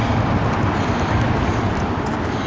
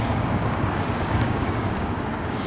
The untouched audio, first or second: first